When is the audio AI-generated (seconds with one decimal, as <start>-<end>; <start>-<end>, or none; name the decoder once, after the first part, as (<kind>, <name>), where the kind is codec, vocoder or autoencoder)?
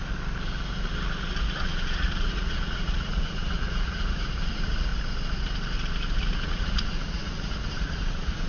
1.5-4.9 (vocoder, Vocos); 6.2-8.5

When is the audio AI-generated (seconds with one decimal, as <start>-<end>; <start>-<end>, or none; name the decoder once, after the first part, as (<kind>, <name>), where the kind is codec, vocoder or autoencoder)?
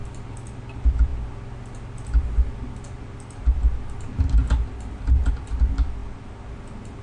none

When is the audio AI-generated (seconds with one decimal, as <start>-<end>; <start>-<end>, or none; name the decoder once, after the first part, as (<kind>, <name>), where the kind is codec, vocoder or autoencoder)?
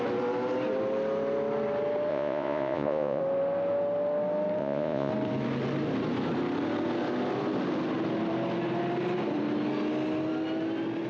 2.1-3.2 (vocoder, Vocos); 4.6-5.1